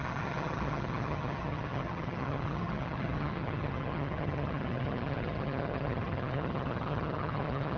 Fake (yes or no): yes